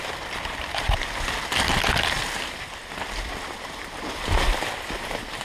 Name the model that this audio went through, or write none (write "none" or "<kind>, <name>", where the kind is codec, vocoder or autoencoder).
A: none